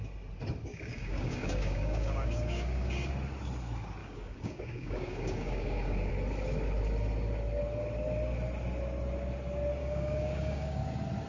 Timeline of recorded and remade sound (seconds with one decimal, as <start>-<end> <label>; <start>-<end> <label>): 0.0-0.7 recorded; 0.7-3.1 remade; 3.1-4.0 recorded; 4.0-6.1 remade; 6.1-9.8 recorded; 9.8-10.8 remade; 10.8-11.3 recorded